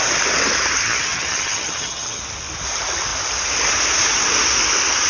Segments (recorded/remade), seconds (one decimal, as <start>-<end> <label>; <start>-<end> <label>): 0.0-0.8 recorded; 0.8-2.2 remade; 2.2-5.1 recorded